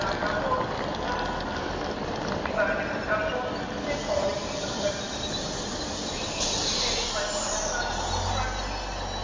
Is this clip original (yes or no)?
yes